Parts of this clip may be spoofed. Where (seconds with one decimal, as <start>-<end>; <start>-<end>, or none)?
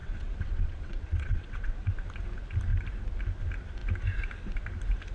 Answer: 0.0-1.9